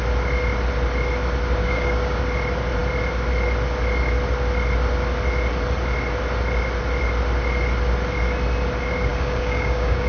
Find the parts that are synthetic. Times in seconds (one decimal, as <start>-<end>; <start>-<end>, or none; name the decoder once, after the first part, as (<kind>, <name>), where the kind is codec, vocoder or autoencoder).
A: 1.6-2.2 (codec, DAC); 9.1-10.1